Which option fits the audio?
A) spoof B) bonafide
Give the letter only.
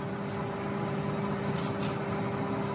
B